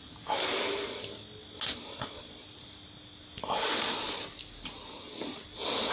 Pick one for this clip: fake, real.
real